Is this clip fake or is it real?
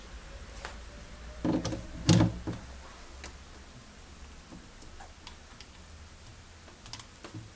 real